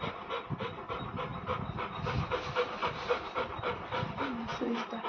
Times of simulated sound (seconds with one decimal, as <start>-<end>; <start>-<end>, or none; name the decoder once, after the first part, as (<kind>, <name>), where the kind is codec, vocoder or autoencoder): 1.3-1.8 (vocoder, BigVGAN v2); 2.8-4.1

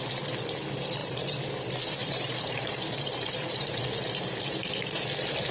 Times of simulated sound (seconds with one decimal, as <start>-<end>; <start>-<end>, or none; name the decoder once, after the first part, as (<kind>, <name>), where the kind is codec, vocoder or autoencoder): 1.0-1.5 (vocoder, BigVGAN v2); 2.0-3.8

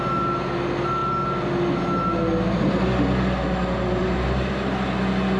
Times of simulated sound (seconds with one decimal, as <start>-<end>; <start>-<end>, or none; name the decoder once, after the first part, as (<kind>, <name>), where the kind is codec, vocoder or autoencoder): 4.0-4.5 (vocoder, BigVGAN v2)

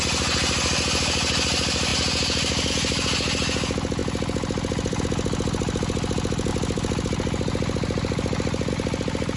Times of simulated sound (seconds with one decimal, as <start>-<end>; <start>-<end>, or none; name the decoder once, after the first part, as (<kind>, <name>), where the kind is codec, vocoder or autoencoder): 4.0-5.0 (vocoder, BigVGAN v2)

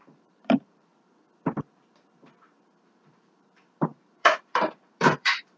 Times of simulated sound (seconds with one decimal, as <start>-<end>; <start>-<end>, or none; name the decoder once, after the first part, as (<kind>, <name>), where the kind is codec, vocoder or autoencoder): 0.0-0.9 (vocoder, BigVGAN v2); 2.6-5.6

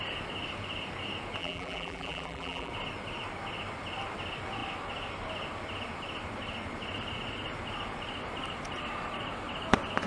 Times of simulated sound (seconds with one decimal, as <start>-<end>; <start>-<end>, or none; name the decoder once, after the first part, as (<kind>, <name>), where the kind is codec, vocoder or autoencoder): 1.4-2.7 (vocoder, BigVGAN v2)

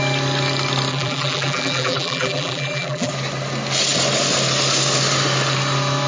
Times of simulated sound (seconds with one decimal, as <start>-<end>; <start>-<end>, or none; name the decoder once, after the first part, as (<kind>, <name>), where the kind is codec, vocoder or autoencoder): 0.9-3.1 (vocoder, BigVGAN v2)